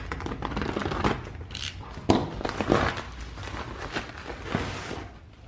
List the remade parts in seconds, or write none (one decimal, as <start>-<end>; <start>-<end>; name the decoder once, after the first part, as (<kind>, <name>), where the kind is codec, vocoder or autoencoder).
0.8-1.6 (vocoder, BigVGAN v2)